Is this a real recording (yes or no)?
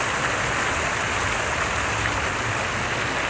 yes